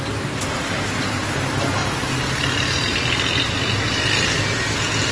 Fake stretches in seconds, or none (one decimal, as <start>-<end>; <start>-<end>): none